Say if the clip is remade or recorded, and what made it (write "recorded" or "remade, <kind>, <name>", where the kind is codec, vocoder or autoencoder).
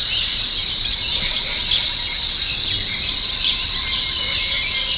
recorded